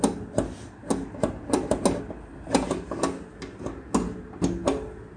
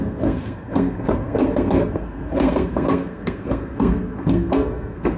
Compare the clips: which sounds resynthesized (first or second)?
second